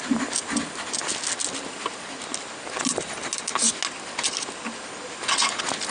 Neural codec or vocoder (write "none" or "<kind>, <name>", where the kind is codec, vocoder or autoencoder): none